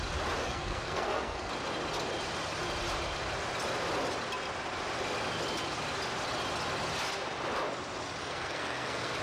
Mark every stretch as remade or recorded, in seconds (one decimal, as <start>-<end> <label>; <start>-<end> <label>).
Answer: 0.0-0.4 recorded; 0.4-1.5 remade; 1.5-8.2 recorded; 8.2-9.2 remade